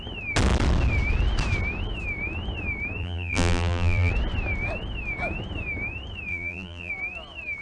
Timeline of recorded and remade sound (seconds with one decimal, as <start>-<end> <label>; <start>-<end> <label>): 0.0-3.0 recorded; 3.0-4.1 remade; 4.1-6.3 recorded; 6.3-6.9 remade; 6.9-7.6 recorded